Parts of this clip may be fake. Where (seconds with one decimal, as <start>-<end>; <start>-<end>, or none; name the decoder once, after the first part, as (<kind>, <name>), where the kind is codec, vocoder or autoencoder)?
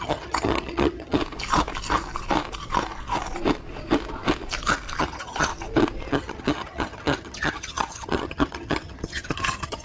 0.0-1.2 (vocoder, HiFi-GAN); 5.0-5.5; 6.1-9.8